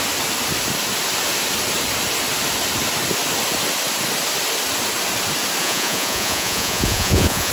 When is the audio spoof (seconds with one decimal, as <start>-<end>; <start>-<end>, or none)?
5.6-7.5